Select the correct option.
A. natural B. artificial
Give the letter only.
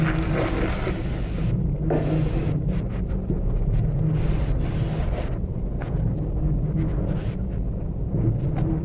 A